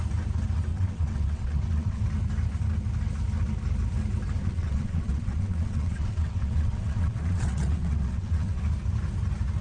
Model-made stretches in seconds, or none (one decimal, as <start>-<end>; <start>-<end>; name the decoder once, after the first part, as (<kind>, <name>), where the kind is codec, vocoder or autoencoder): 0.7-2.0 (vocoder, WaveNeXt); 4.4-8.6